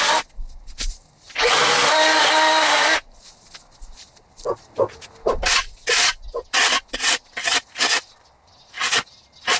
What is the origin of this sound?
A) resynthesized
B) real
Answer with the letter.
B